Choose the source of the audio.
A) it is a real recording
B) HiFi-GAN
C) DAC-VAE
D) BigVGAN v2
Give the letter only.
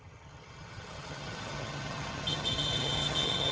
B